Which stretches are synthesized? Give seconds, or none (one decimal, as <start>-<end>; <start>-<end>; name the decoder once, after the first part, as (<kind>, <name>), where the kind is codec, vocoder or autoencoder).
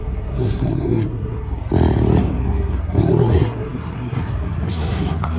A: 0.0-1.6 (codec, SNAC); 2.3-5.4